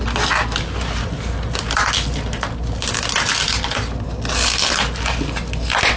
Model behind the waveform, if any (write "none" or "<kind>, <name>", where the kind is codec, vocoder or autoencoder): none